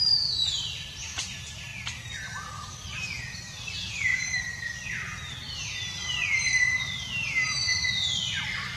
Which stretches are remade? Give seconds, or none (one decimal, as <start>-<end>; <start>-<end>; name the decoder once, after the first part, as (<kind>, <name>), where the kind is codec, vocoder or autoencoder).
1.7-2.7 (vocoder, BigVGAN v2); 4.1-4.9; 7.6-8.4